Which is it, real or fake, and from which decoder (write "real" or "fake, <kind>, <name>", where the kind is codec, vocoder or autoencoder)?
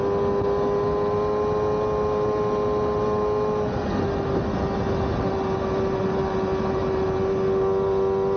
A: real